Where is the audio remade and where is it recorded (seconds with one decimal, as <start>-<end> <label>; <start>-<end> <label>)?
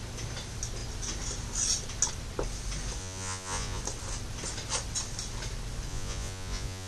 0.0-3.0 recorded; 3.0-3.8 remade; 3.8-5.9 recorded; 5.9-6.9 remade